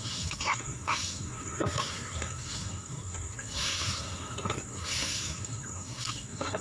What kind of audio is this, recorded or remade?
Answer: remade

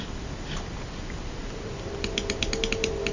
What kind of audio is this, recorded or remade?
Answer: recorded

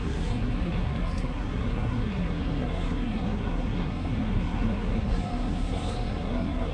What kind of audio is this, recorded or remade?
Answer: remade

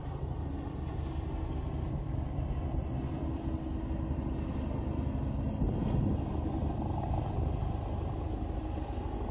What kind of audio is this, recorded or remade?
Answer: recorded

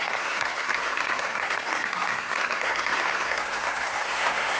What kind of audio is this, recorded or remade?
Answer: remade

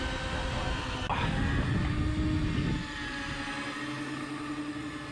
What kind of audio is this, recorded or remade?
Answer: recorded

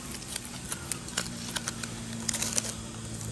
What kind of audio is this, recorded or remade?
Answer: recorded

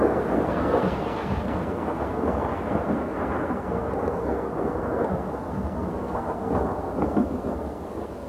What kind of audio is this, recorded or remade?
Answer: remade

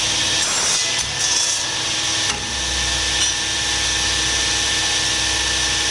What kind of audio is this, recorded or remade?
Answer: recorded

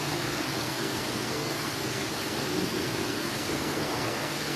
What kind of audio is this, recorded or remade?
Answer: remade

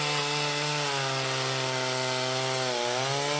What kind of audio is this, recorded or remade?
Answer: recorded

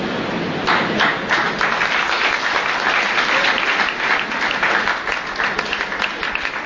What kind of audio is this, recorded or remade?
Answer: recorded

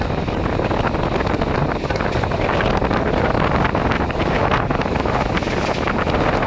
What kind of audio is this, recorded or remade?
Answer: recorded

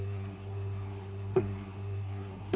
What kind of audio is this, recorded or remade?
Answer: remade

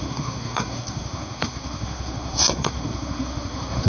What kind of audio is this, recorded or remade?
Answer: remade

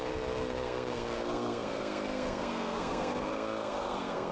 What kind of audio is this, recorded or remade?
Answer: remade